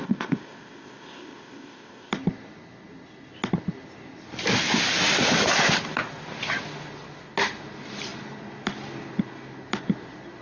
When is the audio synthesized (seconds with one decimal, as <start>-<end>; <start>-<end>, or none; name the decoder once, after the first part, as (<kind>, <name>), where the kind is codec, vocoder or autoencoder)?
0.0-2.1 (codec, ZipCodec)